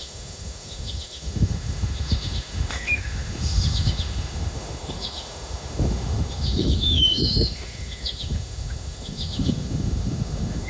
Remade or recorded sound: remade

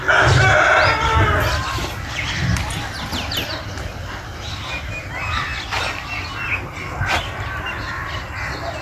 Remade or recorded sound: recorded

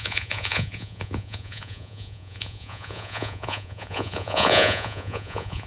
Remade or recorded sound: remade